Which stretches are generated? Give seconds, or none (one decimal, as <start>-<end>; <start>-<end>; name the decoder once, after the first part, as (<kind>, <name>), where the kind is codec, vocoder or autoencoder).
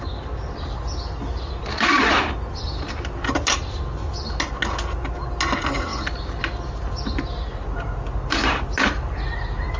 none